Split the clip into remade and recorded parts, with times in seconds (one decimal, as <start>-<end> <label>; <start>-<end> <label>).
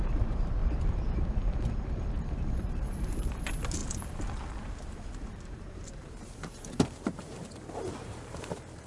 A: 0.0-0.6 remade; 0.6-2.2 recorded; 2.2-3.8 remade; 3.8-4.6 recorded; 4.6-8.9 remade